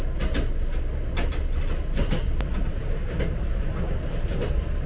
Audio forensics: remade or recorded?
recorded